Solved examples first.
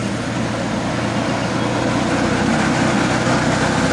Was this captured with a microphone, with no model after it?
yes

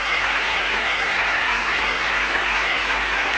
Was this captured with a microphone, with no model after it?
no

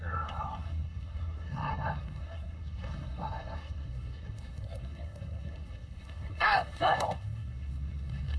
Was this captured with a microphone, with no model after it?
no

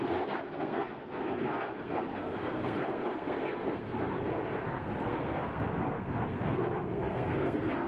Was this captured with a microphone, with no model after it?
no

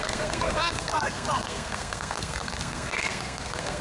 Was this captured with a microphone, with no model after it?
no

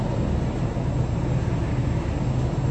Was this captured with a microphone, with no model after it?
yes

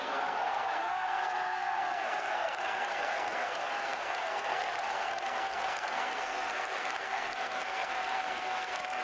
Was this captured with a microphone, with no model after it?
no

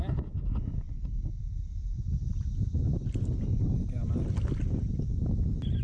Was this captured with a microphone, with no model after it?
yes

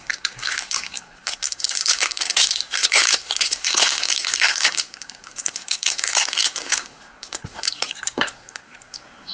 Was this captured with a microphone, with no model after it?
no